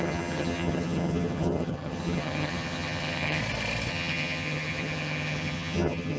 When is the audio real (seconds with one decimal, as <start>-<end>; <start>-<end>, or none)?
3.4-3.9

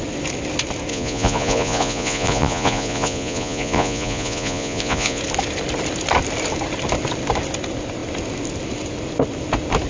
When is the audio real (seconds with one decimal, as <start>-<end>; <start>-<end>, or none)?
0.0-0.9; 5.2-9.9

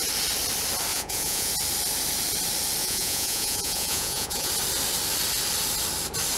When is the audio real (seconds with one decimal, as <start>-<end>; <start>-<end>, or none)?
0.0-0.9; 1.5-2.8; 4.5-6.4

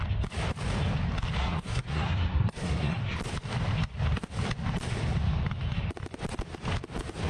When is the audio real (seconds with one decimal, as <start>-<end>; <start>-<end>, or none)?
0.0-1.4; 3.2-7.3